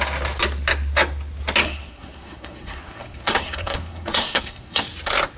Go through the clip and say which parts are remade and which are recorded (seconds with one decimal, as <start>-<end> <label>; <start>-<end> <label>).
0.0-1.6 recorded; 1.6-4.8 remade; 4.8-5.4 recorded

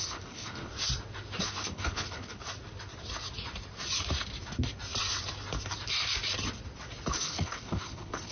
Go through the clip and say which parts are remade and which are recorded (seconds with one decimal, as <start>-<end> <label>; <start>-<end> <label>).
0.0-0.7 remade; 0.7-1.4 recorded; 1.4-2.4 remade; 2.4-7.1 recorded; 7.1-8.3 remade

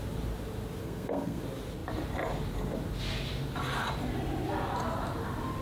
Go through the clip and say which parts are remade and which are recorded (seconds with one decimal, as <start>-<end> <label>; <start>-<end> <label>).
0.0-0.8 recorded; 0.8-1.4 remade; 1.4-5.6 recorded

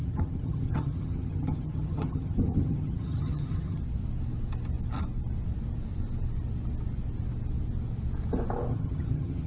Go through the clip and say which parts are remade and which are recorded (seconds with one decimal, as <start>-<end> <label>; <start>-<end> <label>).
0.0-3.8 remade; 3.8-8.7 recorded; 8.7-9.5 remade

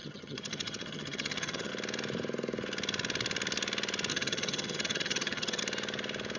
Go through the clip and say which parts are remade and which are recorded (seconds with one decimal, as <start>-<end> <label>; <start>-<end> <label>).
0.0-1.7 remade; 1.7-4.1 recorded; 4.1-5.6 remade; 5.6-6.4 recorded

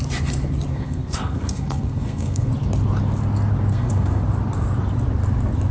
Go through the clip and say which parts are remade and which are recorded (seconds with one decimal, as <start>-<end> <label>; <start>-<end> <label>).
0.0-0.7 recorded; 0.7-2.5 remade; 2.5-3.7 recorded; 3.7-4.2 remade; 4.2-5.7 recorded

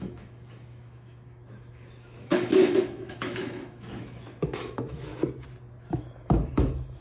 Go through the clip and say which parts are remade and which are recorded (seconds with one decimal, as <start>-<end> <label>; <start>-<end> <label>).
0.0-5.1 remade; 5.1-5.9 recorded; 5.9-7.0 remade

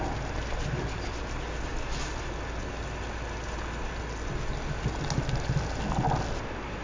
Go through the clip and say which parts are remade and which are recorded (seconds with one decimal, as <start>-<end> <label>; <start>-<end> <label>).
0.0-6.8 recorded